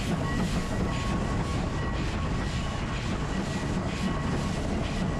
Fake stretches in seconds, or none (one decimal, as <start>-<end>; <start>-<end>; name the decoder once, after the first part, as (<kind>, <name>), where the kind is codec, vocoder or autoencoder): none